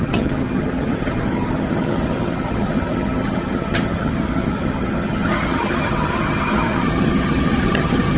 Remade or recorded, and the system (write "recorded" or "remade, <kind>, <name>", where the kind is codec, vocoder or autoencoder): remade, vocoder, HiFi-GAN